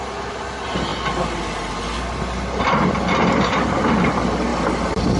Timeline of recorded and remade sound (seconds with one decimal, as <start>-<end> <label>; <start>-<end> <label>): 0.0-5.2 recorded